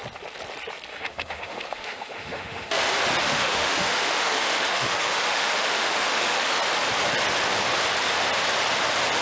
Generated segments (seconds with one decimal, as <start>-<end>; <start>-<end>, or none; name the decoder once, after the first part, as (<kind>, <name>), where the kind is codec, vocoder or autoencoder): 0.9-2.8 (autoencoder, DAC-VAE); 3.2-6.6